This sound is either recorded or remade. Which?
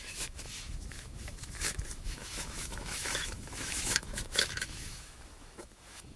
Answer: remade